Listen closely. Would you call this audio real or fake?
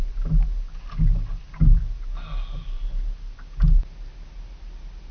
real